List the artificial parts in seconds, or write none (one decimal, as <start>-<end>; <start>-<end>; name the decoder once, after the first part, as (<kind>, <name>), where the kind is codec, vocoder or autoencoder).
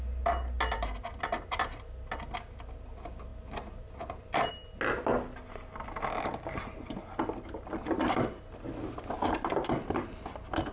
none